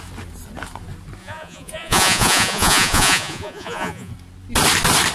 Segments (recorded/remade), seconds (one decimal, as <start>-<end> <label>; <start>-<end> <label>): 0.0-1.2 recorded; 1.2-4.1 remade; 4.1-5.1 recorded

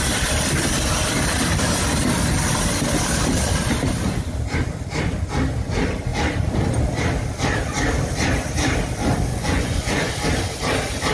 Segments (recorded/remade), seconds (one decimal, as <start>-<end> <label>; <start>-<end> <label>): 0.0-9.3 recorded; 9.3-10.1 remade; 10.1-11.1 recorded

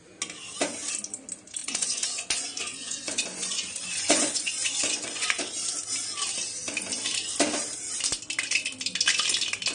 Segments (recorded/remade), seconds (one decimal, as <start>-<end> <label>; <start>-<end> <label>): 0.0-1.6 recorded; 1.6-5.4 remade; 5.4-9.7 recorded

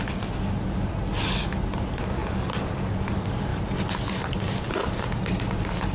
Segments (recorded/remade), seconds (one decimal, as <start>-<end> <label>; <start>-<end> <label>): 0.0-5.9 recorded